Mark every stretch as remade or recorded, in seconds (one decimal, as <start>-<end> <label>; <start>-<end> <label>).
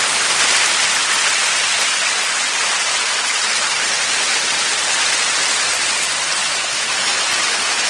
0.0-6.4 recorded; 6.4-7.9 remade